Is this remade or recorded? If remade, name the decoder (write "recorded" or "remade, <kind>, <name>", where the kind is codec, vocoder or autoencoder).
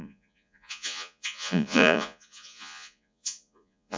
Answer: remade, vocoder, Vocos